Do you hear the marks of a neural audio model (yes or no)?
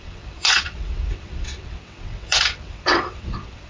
yes